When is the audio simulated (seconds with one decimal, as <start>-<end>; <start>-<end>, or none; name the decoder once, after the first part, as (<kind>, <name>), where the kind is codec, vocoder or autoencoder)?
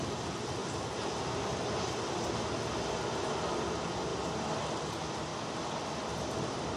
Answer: none